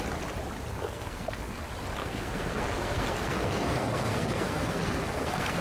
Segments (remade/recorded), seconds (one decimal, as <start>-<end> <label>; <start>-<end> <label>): 0.0-0.7 recorded; 0.7-1.6 remade; 1.6-2.0 recorded; 2.0-5.6 remade